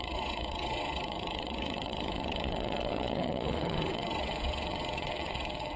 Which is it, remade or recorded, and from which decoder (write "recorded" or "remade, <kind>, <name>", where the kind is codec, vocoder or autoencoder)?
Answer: remade, vocoder, WaveNeXt